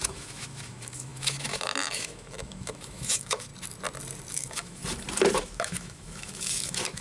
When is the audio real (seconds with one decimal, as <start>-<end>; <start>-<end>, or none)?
3.5-4.3; 4.8-5.4